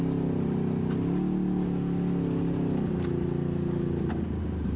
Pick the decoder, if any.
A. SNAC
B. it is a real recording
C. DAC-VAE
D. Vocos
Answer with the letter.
B